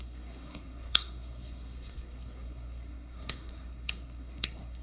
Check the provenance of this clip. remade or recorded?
remade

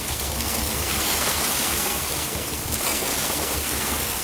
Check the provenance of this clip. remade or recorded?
remade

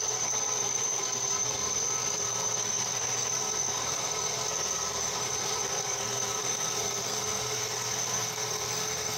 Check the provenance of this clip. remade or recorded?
remade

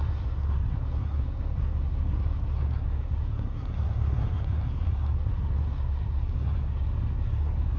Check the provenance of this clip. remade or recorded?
remade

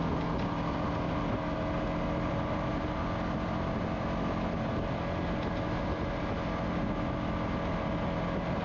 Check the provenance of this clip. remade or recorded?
recorded